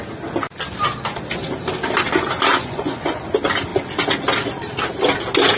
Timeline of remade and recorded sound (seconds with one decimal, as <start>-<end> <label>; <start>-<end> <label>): 0.0-2.5 recorded; 2.5-3.2 remade; 3.2-5.6 recorded